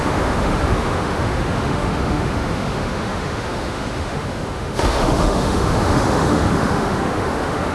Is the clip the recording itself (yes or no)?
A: no